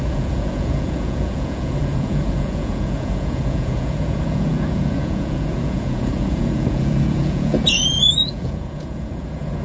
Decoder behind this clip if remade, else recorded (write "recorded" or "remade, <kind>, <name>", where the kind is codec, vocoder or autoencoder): remade, vocoder, Vocos